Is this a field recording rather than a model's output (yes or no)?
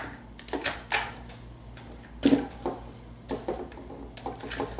yes